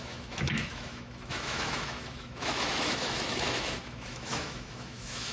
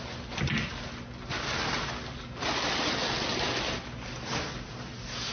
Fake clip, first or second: first